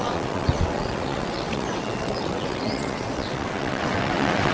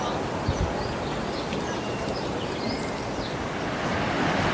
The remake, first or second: first